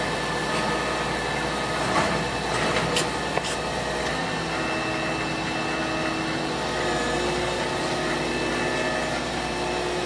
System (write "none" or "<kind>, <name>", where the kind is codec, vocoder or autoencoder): none